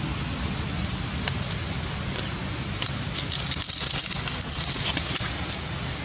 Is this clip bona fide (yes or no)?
yes